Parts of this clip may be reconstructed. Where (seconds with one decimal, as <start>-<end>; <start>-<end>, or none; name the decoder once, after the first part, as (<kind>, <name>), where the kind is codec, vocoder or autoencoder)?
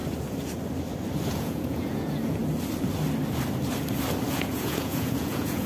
1.3-2.4 (vocoder, Vocos); 4.3-5.7